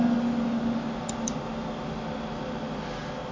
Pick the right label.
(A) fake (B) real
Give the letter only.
B